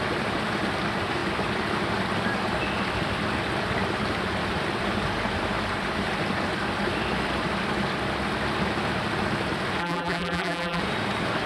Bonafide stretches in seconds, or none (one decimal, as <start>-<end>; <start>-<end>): 0.0-9.8; 10.8-11.5